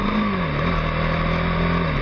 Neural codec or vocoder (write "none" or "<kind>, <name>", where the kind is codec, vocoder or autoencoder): none